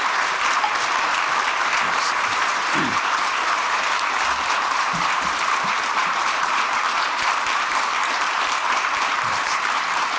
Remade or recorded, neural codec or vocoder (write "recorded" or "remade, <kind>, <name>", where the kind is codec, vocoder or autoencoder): remade, vocoder, BigVGAN v2